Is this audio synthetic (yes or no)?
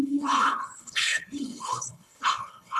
yes